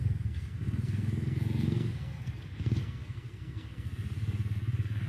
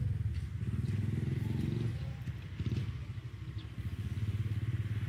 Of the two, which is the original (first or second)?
second